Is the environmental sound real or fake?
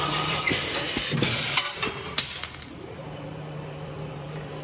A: fake